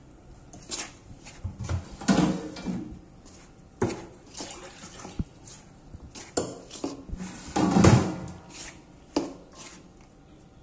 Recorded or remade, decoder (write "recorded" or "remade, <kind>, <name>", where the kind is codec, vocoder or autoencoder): recorded